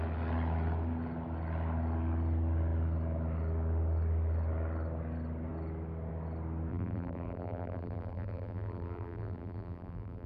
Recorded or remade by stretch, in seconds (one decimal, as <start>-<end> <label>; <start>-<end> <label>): 0.0-6.7 recorded; 6.7-10.3 remade